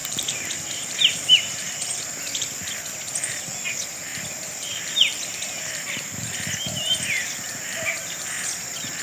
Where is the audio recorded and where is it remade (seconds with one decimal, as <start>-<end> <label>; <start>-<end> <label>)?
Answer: 0.0-2.0 remade; 2.0-4.1 recorded; 4.1-8.3 remade; 8.3-9.0 recorded